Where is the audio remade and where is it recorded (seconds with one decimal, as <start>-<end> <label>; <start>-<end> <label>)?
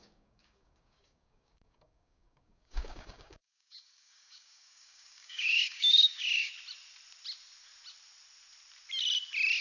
0.0-6.5 remade; 6.5-9.6 recorded